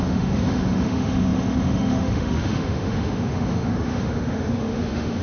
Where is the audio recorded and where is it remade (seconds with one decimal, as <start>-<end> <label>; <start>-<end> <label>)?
0.0-5.2 remade